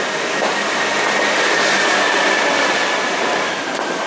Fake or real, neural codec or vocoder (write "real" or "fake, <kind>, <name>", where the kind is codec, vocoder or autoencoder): fake, vocoder, BigVGAN v2